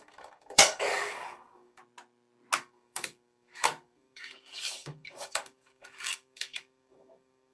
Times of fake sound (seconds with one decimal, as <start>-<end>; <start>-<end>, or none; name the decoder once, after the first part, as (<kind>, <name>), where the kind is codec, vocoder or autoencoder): 0.0-1.8 (codec, DAC); 2.6-7.5